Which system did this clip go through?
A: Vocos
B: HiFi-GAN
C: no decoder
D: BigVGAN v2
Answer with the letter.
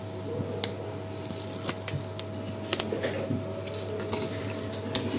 C